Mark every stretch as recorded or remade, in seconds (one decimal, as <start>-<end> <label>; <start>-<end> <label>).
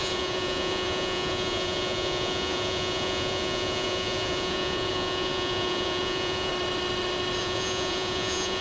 0.0-6.5 remade; 6.5-7.4 recorded; 7.4-8.6 remade